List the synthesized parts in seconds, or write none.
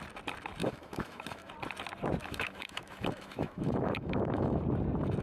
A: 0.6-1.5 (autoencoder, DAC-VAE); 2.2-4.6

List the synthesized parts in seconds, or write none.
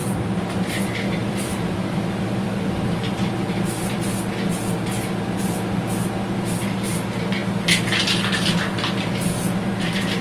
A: 1.2-4.2 (vocoder, BigVGAN v2)